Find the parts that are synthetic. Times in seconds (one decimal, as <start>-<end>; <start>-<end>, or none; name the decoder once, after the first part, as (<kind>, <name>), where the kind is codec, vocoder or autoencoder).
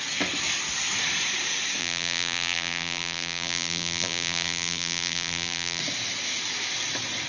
1.8-5.8 (vocoder, BigVGAN v2)